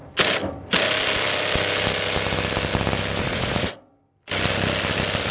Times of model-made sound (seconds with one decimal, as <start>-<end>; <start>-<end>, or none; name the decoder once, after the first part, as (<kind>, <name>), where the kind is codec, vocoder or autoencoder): 3.2-3.9 (vocoder, Vocos)